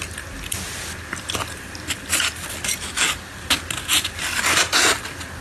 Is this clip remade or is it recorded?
recorded